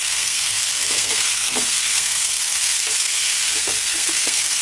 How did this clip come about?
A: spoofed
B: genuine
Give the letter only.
A